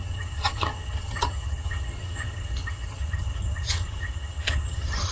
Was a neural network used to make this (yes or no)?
yes